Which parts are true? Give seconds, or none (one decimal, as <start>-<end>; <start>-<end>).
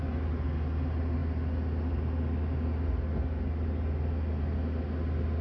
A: 0.0-5.4